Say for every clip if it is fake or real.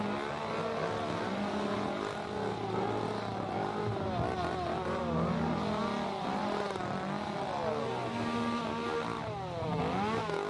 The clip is real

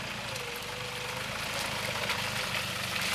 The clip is real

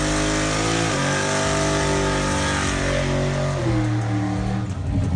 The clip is real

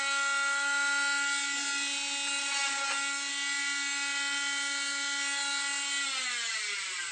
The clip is real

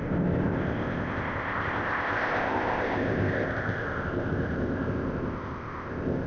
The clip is fake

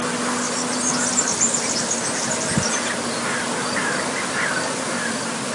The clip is real